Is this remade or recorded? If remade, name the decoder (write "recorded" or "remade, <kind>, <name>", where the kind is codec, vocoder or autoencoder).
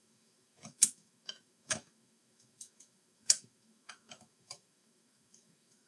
remade, autoencoder, DAC-VAE